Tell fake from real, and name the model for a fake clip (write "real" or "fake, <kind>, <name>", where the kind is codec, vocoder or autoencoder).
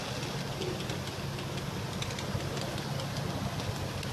real